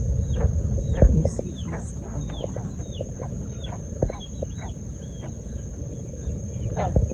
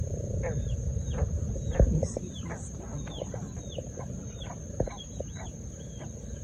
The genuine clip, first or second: first